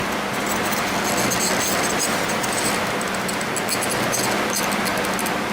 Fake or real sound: real